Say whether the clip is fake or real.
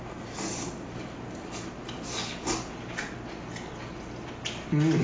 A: real